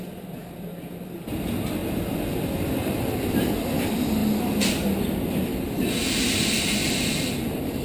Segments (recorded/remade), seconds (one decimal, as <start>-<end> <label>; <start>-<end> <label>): 0.0-7.8 recorded